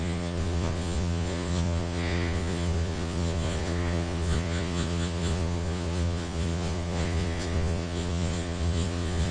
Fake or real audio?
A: fake